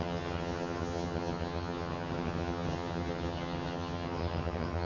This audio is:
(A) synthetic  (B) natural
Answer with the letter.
A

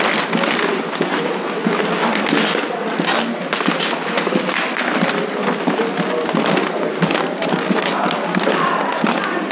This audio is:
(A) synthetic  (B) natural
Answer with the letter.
B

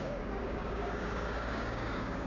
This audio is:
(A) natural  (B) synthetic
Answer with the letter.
B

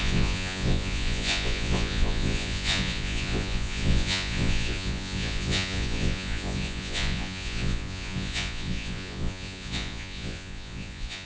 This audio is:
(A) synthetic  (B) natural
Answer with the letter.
A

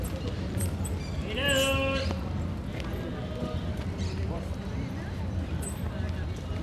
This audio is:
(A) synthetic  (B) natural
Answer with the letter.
B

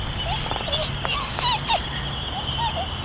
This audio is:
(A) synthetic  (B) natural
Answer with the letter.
B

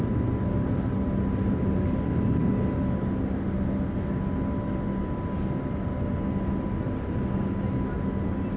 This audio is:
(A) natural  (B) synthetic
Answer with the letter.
A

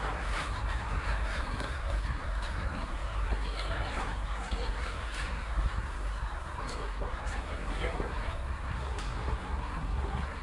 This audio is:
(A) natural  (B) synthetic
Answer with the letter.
B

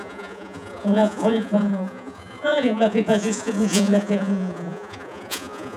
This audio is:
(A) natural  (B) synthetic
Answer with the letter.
B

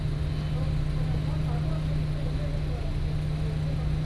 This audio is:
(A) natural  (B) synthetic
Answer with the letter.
A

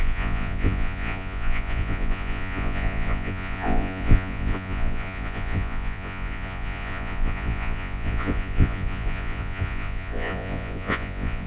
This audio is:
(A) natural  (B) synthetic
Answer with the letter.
B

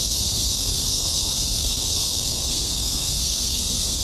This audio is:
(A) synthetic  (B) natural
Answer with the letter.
A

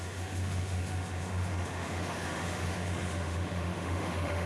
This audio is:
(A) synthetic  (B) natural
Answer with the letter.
A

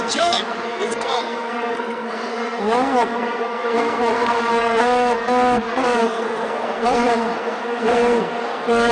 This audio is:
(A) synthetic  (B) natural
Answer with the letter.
A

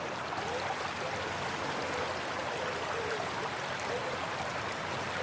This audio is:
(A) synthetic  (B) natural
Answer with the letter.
B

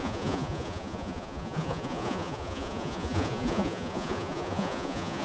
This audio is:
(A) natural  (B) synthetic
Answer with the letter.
B